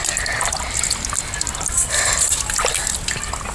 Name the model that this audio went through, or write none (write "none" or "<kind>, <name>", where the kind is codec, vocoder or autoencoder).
none